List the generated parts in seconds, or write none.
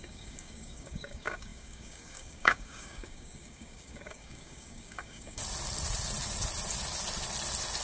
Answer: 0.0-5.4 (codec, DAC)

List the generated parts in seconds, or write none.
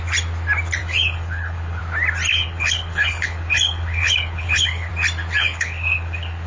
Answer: 0.8-1.8 (codec, HILCodec); 2.3-4.9; 5.4-6.5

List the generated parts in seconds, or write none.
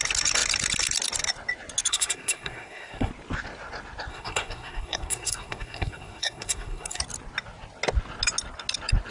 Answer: 1.9-3.1 (codec, SNAC); 4.1-7.0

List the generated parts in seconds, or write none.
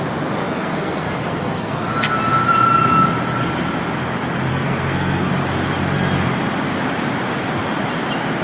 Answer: 0.4-1.9 (codec, SNAC); 4.5-5.3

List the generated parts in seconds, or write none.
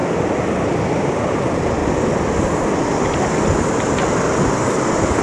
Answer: 0.6-1.8 (vocoder, BigVGAN v2)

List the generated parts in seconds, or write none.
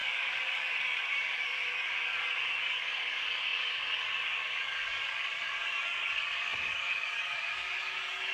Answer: 0.0-8.3 (codec, DAC)